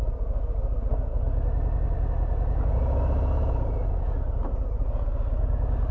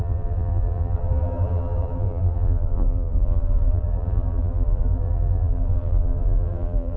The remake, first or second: second